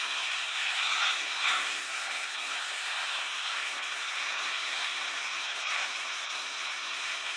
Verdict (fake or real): fake